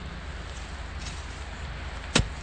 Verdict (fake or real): real